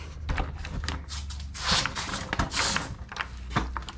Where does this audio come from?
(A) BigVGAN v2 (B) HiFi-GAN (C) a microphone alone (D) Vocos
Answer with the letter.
C